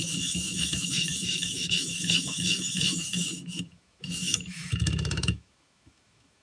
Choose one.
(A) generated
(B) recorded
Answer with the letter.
A